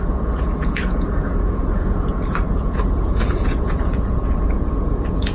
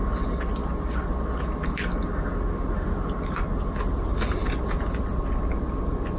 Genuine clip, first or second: second